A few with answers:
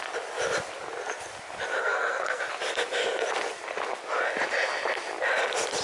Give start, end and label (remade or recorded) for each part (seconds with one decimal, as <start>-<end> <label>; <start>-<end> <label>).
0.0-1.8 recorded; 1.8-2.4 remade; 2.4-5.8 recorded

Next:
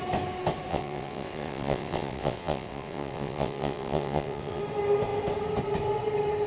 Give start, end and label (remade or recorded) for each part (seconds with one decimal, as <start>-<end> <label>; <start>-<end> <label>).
0.0-0.7 recorded; 0.7-4.6 remade; 4.6-6.5 recorded

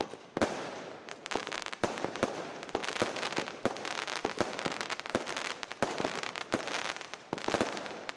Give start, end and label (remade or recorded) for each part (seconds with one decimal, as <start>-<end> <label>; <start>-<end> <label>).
0.0-1.4 recorded; 1.4-2.2 remade; 2.2-4.2 recorded; 4.2-6.2 remade; 6.2-8.2 recorded

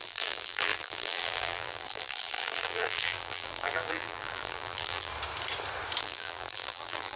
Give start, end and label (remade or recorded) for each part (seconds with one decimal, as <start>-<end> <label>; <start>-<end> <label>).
0.0-5.1 remade; 5.1-6.0 recorded; 6.0-7.2 remade

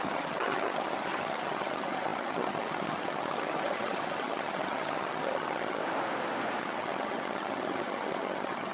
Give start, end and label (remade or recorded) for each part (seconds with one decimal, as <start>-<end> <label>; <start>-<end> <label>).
0.0-5.8 remade; 5.8-6.6 recorded; 6.6-8.7 remade

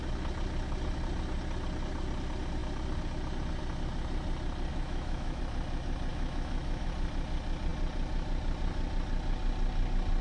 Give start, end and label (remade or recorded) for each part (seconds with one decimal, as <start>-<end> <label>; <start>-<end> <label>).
0.0-4.7 recorded; 4.7-5.4 remade; 5.4-6.1 recorded; 6.1-6.9 remade; 6.9-10.2 recorded